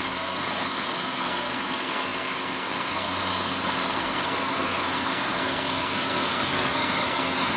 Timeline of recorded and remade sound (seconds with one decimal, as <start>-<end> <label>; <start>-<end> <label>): 0.0-7.6 remade